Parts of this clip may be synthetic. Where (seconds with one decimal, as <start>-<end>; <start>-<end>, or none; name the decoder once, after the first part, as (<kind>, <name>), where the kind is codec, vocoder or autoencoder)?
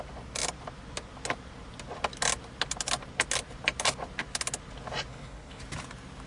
5.1-5.6 (codec, HILCodec)